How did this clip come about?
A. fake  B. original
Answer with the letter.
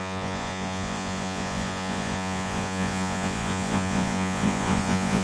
A